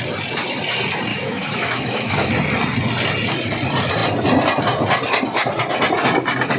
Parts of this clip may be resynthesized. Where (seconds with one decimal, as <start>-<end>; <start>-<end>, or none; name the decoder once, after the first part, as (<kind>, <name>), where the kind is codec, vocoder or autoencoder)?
1.1-2.3 (autoencoder, DAC-VAE)